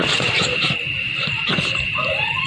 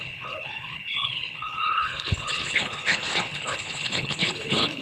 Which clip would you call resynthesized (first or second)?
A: second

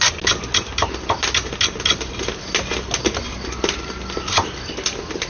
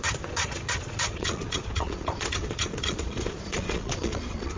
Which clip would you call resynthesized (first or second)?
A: second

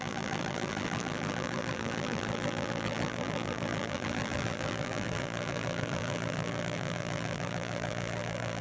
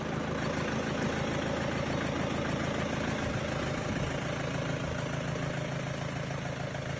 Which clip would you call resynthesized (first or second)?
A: first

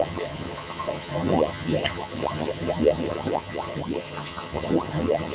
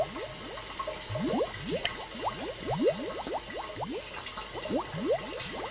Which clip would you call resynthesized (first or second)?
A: first